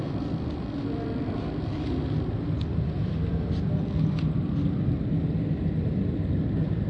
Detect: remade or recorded recorded